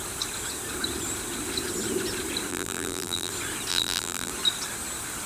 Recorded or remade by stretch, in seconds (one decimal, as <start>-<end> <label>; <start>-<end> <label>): 0.0-2.5 recorded; 2.5-3.3 remade; 3.3-3.7 recorded; 3.7-4.3 remade; 4.3-5.3 recorded